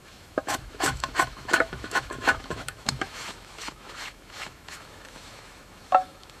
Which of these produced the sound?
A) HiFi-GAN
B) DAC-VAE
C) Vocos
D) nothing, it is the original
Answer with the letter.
B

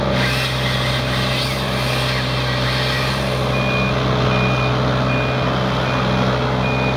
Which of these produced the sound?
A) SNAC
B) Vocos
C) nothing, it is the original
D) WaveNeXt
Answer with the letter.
C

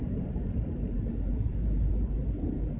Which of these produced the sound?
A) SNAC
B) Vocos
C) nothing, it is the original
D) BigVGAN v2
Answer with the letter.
D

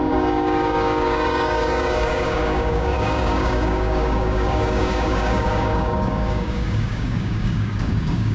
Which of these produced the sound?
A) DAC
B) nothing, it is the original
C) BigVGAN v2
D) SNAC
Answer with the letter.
A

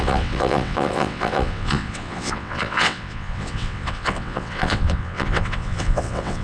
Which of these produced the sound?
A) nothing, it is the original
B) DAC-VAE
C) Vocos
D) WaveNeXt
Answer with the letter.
D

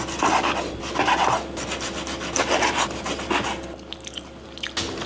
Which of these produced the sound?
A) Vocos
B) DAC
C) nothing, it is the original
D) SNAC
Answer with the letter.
C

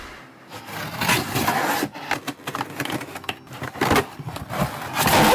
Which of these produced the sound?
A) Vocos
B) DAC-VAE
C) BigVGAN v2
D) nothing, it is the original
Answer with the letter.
D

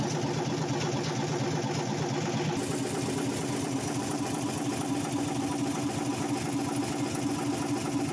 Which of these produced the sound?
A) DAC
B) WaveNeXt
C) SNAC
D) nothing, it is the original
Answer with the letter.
D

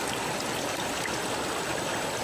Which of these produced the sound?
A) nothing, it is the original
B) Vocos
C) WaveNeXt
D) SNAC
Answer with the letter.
A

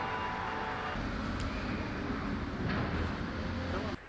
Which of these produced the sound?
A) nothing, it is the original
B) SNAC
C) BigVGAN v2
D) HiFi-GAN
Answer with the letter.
A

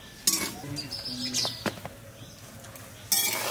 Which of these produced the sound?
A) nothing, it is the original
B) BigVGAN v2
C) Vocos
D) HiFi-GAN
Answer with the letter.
A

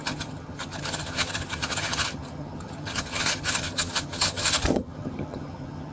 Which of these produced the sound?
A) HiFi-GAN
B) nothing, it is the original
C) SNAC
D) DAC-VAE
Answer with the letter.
A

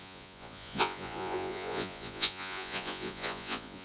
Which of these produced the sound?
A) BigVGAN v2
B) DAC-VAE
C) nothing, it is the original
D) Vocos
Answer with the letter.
D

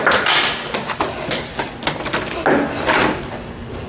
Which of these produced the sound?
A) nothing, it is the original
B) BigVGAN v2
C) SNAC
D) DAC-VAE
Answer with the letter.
A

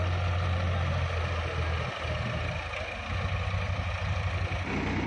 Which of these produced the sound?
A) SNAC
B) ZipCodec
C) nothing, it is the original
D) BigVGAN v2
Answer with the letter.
C